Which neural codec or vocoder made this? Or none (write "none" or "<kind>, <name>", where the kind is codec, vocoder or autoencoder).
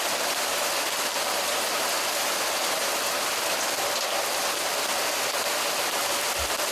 none